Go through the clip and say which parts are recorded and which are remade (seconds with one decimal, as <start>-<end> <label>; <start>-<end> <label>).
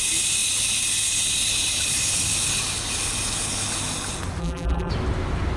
0.0-4.4 recorded; 4.4-4.9 remade; 4.9-5.6 recorded